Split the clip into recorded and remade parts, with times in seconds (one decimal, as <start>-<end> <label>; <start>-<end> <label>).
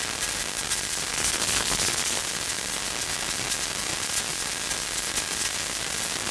0.0-1.1 recorded; 1.1-2.2 remade; 2.2-6.3 recorded